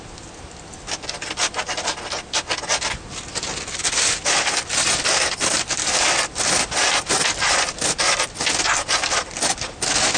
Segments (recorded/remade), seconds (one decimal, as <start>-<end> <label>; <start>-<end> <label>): 0.0-10.2 recorded